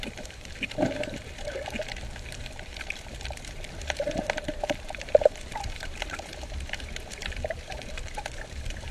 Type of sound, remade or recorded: remade